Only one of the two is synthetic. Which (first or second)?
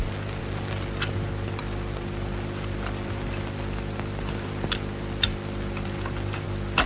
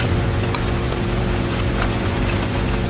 second